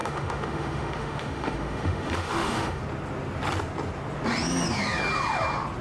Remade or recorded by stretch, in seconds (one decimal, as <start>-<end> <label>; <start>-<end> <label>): 0.0-2.8 remade; 2.8-5.8 recorded